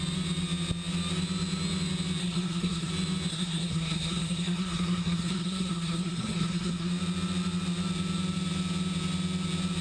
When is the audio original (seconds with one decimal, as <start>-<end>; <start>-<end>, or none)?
0.0-2.2; 2.9-3.3; 6.9-9.8